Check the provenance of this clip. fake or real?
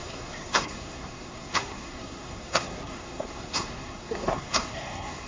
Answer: fake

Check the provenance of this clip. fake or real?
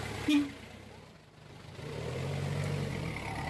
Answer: real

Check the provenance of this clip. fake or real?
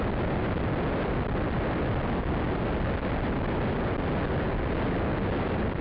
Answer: real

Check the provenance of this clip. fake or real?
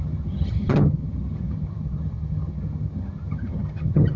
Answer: fake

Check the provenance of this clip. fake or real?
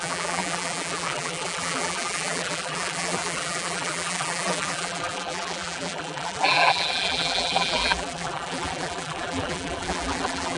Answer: fake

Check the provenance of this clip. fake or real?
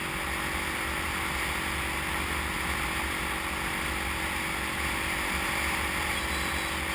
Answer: real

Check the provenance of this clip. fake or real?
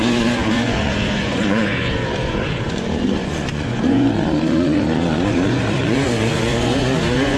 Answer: fake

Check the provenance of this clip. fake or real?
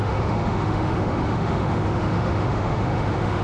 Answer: fake